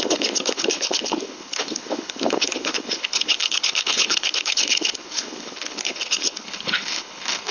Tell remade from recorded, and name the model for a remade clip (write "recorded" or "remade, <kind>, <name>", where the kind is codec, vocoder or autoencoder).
remade, codec, HILCodec